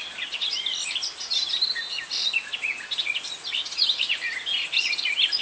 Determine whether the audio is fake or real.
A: real